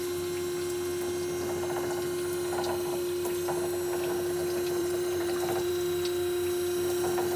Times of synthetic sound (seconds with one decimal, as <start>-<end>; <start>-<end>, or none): 4.8-5.7